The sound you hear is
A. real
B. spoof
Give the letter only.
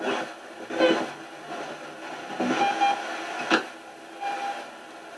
A